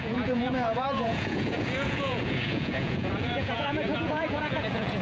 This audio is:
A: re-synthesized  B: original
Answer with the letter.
A